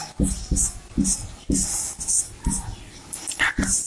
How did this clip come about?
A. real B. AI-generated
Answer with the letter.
A